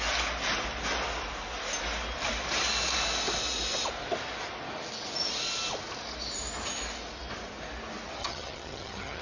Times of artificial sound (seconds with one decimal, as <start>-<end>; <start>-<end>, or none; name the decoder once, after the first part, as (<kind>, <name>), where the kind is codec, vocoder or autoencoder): 8.2-9.2 (vocoder, HiFi-GAN)